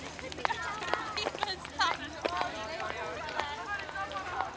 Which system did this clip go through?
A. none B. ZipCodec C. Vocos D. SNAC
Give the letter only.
A